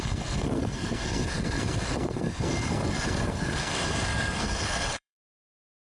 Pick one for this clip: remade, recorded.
remade